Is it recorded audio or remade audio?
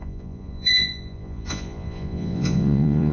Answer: remade